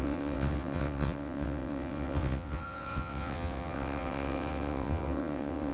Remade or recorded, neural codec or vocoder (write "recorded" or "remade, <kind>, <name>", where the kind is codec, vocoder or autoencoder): remade, vocoder, WaveNeXt